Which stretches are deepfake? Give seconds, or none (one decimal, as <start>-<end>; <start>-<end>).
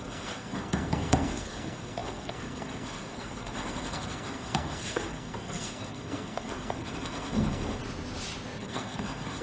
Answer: 0.0-7.8; 8.6-9.4